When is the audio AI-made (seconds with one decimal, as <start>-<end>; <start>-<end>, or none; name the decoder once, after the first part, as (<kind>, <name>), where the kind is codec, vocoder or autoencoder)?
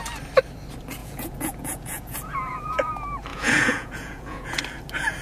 1.0-2.9 (vocoder, Vocos); 3.3-4.6